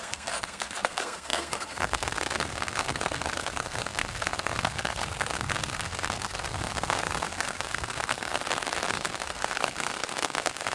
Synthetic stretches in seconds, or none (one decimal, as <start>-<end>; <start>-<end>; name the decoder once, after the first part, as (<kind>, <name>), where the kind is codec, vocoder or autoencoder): 0.0-8.4 (codec, SNAC); 8.9-10.7